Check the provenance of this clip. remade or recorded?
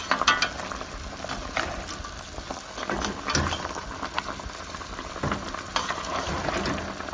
recorded